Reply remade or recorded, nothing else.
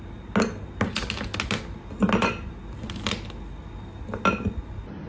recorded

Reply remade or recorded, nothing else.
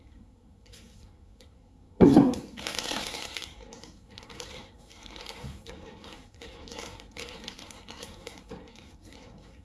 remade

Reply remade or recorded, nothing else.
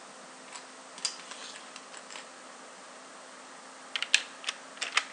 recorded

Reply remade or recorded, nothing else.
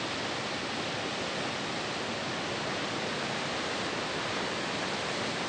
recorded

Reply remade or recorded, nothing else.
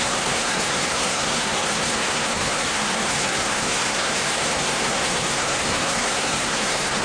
remade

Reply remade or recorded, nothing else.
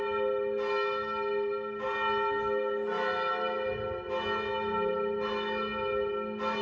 recorded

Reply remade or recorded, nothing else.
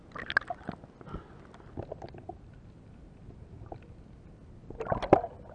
recorded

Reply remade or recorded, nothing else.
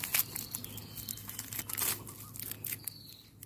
recorded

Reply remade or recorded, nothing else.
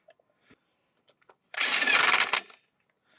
recorded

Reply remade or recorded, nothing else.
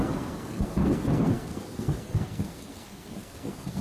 remade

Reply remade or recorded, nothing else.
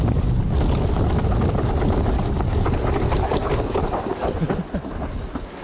recorded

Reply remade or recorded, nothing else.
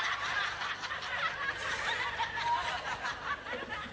recorded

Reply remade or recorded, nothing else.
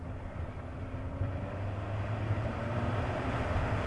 recorded